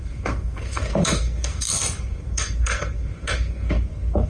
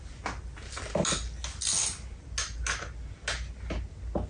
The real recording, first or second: second